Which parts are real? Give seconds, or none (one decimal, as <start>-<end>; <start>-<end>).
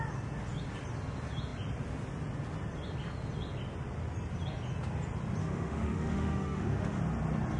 0.0-5.4; 7.0-7.6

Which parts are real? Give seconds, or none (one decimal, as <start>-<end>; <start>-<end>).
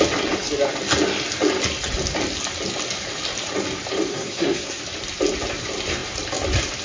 0.0-4.1; 4.8-6.8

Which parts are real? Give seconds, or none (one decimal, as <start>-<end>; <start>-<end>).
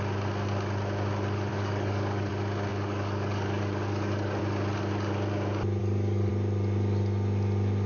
0.0-1.5; 2.3-2.7; 4.4-5.8; 6.3-7.9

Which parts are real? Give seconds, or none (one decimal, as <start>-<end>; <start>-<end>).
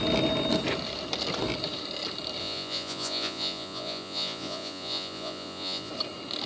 0.0-2.4; 5.9-6.5